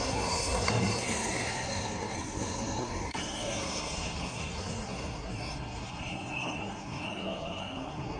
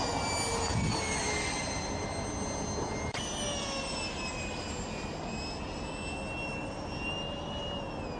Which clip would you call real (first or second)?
second